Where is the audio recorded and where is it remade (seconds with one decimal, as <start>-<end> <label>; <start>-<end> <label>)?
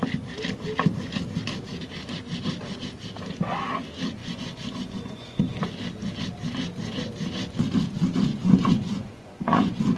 0.0-4.2 recorded; 4.2-5.6 remade; 5.6-8.3 recorded; 8.3-10.0 remade